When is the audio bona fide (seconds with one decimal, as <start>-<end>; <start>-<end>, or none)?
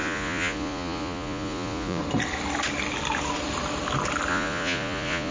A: 2.0-4.3